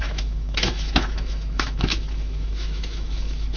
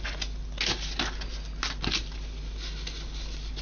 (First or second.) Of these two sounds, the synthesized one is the first